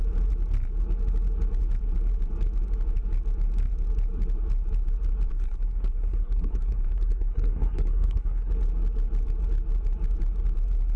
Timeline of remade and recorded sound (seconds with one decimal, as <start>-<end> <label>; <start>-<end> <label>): 0.0-5.3 recorded; 5.3-8.5 remade; 8.5-11.0 recorded